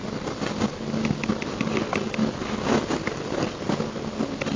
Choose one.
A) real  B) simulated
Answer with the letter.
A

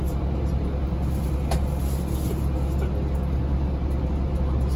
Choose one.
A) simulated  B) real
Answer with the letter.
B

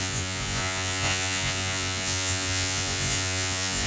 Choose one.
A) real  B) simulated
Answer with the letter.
B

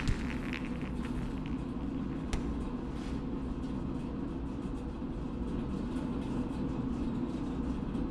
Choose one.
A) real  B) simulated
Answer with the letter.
A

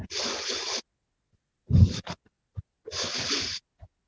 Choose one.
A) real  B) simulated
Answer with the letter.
A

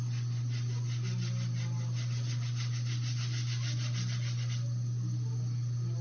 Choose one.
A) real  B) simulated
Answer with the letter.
A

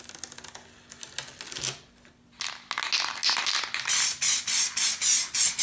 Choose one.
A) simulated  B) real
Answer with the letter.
B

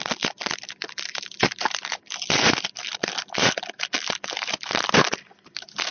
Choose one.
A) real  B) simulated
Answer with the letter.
B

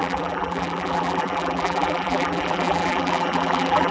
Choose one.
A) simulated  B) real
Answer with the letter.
A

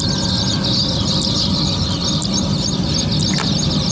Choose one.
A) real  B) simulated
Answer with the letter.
A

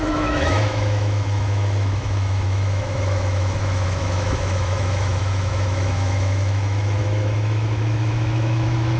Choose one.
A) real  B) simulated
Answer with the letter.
B